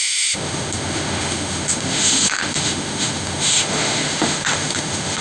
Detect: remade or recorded remade